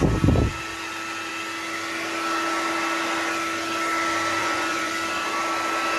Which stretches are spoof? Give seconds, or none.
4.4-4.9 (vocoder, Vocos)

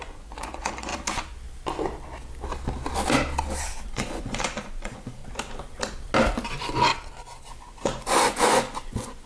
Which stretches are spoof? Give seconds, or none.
0.0-0.9 (vocoder, Vocos); 3.9-5.2; 6.5-6.9; 7.5-9.3

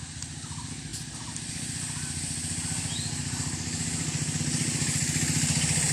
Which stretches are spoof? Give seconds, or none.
none

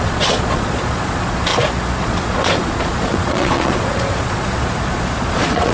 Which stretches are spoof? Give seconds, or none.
0.0-1.5 (vocoder, Vocos); 2.0-5.7

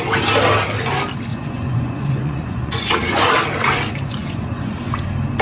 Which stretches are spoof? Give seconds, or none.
1.3-3.2 (vocoder, Vocos); 4.2-4.7

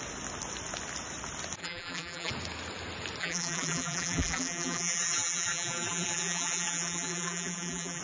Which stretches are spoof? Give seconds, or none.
1.6-2.3 (vocoder, BigVGAN v2); 3.2-8.0